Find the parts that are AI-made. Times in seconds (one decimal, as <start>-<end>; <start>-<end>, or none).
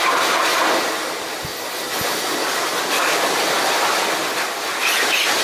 none